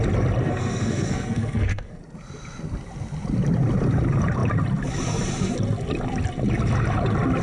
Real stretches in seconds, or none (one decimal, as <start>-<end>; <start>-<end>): 0.0-0.4; 2.0-7.4